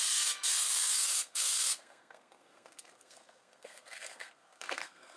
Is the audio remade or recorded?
remade